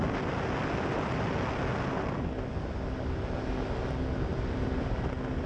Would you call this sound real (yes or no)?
yes